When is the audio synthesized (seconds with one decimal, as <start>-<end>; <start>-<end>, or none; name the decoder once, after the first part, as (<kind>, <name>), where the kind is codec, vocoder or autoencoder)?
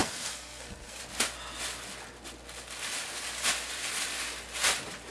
0.0-1.0 (codec, SNAC)